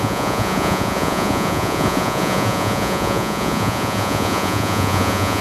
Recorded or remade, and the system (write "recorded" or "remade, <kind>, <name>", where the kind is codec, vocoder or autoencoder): remade, vocoder, Vocos